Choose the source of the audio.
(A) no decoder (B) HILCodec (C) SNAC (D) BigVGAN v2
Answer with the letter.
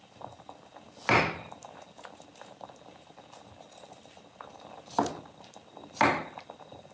A